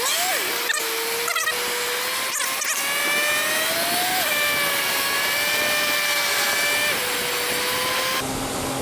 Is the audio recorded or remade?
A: recorded